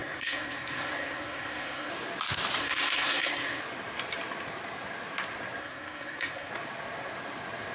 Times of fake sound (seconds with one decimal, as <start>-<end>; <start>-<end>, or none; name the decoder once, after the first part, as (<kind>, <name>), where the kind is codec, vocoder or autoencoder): 0.0-1.9 (codec, SNAC); 2.6-3.6; 5.6-6.5